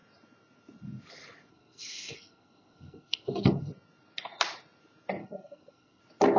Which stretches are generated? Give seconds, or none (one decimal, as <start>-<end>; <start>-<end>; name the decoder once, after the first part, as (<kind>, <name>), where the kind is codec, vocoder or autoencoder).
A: 1.5-3.7 (codec, SNAC); 5.2-6.0